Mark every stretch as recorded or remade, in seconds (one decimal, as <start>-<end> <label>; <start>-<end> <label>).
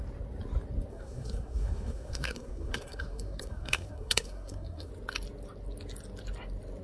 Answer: 0.0-0.9 recorded; 0.9-4.9 remade; 4.9-6.8 recorded